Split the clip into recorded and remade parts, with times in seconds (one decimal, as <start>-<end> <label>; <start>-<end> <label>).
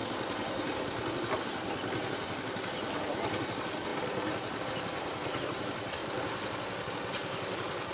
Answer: 0.0-6.0 remade; 6.0-6.9 recorded; 6.9-7.9 remade